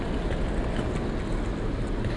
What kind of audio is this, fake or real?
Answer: real